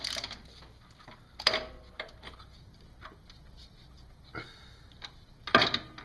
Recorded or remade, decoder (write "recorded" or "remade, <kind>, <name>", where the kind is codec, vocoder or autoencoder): recorded